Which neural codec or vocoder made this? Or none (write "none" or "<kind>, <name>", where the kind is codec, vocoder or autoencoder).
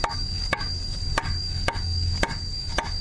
codec, DAC